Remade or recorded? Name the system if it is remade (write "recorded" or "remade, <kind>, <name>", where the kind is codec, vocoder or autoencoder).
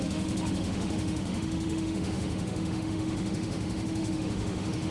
remade, autoencoder, DAC-VAE